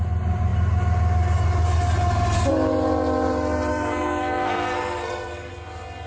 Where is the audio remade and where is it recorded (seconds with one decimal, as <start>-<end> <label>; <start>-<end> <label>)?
0.0-3.7 recorded; 3.7-5.5 remade; 5.5-6.1 recorded